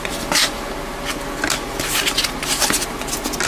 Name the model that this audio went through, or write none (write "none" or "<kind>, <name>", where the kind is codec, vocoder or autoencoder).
none